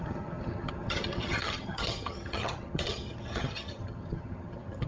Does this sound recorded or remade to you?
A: remade